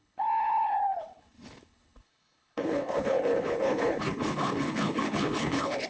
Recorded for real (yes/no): no